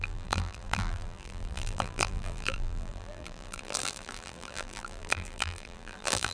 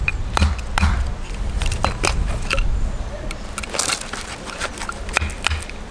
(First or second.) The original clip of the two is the second